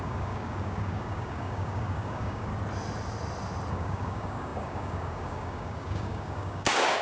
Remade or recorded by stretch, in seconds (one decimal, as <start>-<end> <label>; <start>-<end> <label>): 0.0-2.5 remade; 2.5-3.7 recorded; 3.7-7.0 remade